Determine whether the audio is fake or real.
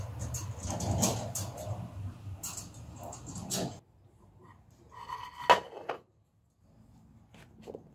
real